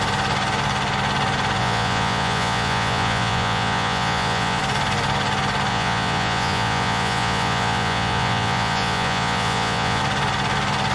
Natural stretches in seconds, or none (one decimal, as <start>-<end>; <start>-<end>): 0.0-1.6; 4.6-5.7; 10.0-10.9